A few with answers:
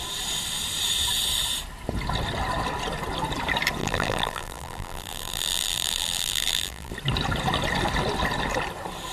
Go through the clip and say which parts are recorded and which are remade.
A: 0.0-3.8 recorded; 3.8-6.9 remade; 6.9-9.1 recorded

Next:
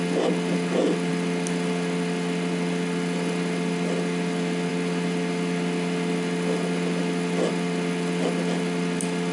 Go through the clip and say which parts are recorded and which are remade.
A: 0.0-9.3 recorded

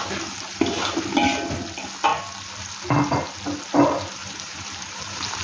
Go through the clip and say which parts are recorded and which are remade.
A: 0.0-4.2 recorded; 4.2-5.4 remade

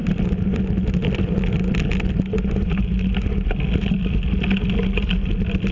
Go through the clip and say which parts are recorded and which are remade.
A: 0.0-0.6 remade; 0.6-5.7 recorded

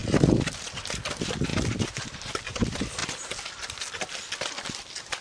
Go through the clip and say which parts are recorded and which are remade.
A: 0.0-5.2 remade

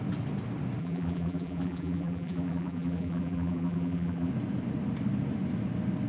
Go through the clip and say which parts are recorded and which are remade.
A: 0.0-0.8 recorded; 0.8-4.3 remade; 4.3-6.1 recorded